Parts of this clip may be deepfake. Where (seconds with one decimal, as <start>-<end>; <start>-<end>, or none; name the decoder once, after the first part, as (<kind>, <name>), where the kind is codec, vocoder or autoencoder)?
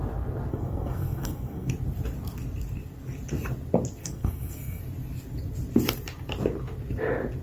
0.5-1.7 (codec, SNAC); 4.0-4.8